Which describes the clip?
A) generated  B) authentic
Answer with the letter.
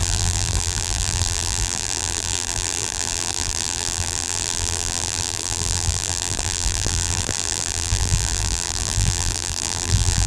A